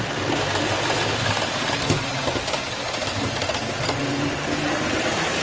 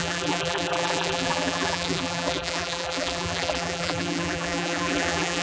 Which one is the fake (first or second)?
second